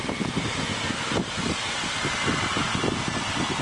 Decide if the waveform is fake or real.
real